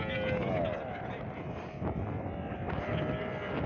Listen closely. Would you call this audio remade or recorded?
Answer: recorded